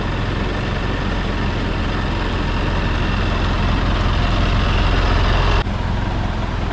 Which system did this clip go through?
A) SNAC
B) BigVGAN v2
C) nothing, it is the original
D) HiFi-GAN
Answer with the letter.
C